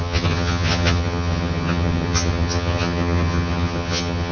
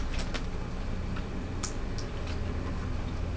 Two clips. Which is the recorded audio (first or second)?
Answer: second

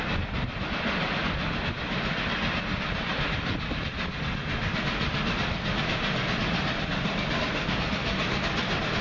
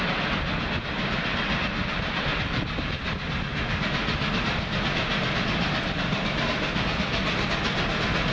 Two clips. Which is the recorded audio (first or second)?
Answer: second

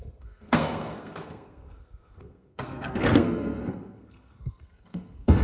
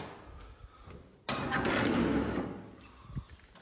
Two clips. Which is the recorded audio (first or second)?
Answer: second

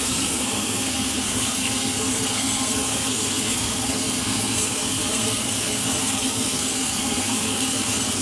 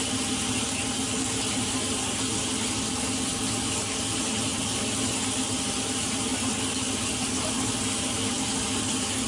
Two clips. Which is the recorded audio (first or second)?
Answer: second